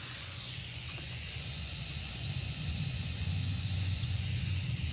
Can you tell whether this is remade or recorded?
remade